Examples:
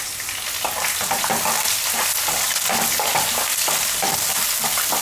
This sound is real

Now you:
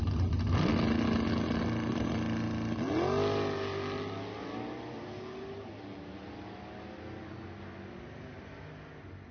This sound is real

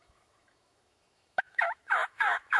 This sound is fake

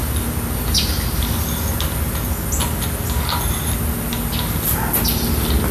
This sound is real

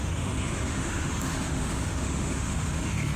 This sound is fake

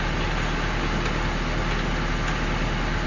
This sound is real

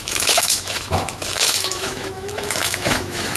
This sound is fake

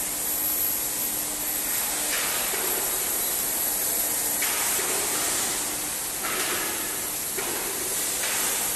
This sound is real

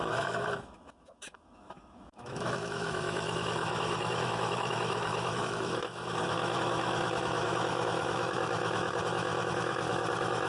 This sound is fake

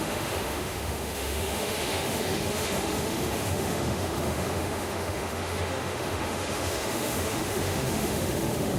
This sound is fake